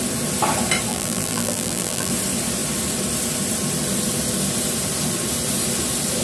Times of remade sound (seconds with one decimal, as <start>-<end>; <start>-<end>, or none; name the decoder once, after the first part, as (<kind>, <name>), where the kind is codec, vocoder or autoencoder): 0.9-2.1 (vocoder, BigVGAN v2)